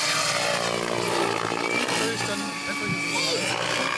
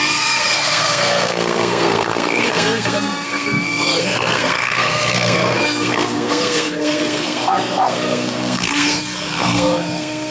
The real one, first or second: first